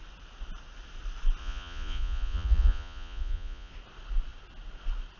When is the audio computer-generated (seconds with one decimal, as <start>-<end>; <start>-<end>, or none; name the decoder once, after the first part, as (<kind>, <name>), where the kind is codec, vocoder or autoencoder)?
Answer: 1.4-3.7 (vocoder, Vocos)